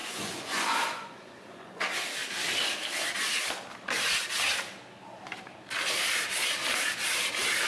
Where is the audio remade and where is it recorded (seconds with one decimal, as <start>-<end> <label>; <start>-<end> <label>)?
0.0-1.8 remade; 1.8-7.7 recorded